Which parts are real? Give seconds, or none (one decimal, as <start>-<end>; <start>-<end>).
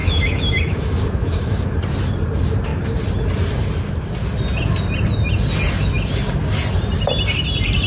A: 1.7-7.9